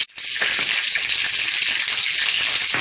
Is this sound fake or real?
real